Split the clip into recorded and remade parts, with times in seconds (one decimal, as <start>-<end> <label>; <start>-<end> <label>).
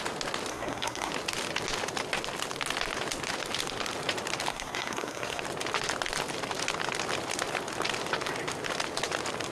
0.0-0.5 recorded; 0.5-1.1 remade; 1.1-4.5 recorded; 4.5-5.4 remade; 5.4-9.5 recorded